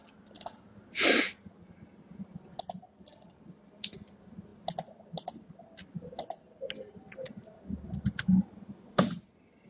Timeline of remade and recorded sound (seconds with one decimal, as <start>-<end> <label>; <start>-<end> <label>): 0.0-9.7 recorded